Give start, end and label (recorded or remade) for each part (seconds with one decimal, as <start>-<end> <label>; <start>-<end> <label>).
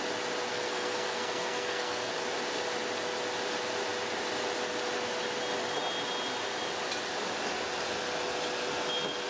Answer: 0.0-0.5 recorded; 0.5-2.1 remade; 2.1-9.3 recorded